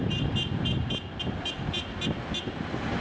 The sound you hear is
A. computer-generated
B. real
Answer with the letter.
B